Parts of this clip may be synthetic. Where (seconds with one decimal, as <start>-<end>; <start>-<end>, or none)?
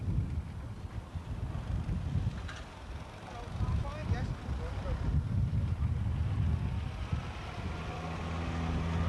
none